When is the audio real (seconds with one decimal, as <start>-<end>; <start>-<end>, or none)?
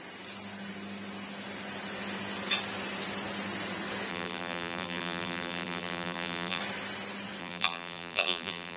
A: 0.0-4.1; 6.6-7.4